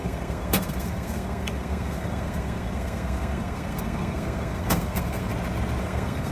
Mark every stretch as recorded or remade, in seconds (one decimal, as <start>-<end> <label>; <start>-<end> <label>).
0.0-5.3 remade; 5.3-5.8 recorded; 5.8-6.3 remade